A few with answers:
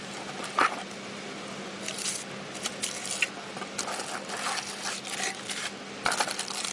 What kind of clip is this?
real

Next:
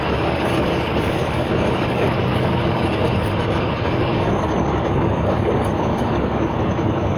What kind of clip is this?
fake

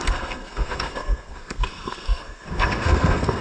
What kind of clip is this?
fake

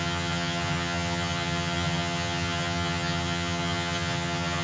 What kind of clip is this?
fake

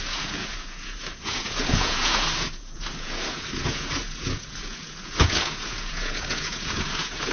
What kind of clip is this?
fake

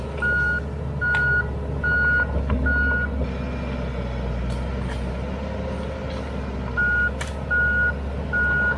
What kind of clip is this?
real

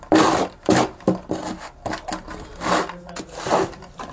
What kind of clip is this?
real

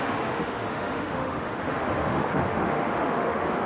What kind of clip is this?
fake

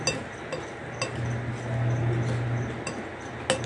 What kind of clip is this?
real